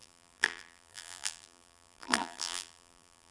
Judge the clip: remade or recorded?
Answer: remade